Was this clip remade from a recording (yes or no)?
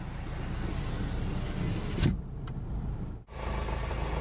no